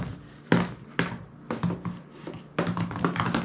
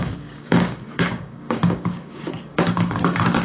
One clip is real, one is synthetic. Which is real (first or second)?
first